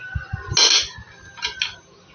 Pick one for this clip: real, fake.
real